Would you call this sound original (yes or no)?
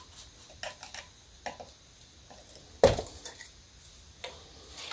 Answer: yes